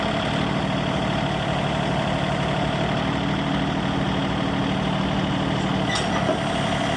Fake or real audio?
real